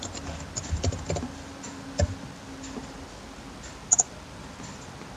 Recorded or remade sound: recorded